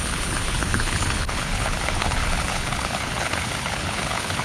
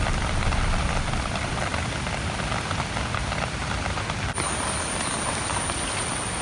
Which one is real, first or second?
second